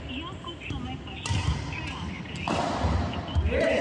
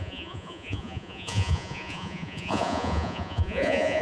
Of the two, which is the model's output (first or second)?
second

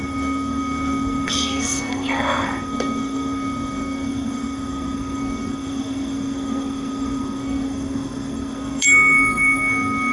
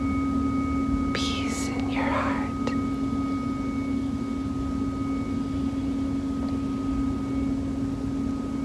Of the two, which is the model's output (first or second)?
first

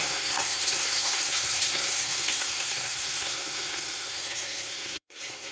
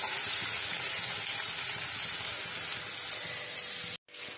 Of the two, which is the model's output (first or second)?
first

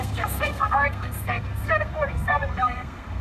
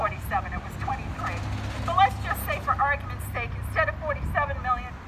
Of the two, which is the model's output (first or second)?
first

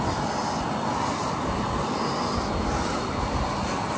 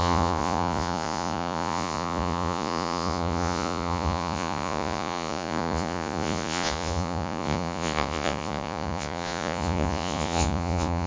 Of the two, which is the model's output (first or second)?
second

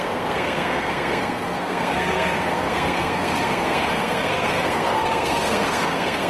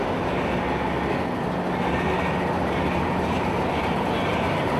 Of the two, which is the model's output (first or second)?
first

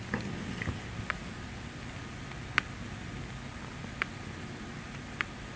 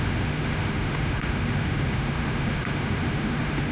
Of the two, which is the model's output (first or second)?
second